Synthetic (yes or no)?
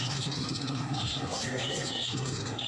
yes